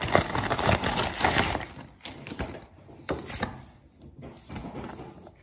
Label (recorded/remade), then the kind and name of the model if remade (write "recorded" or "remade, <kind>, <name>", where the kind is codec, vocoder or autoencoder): recorded